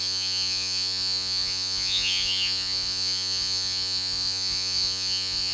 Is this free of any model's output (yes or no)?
no